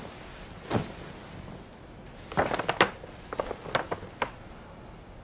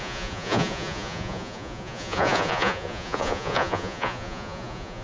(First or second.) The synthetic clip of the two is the second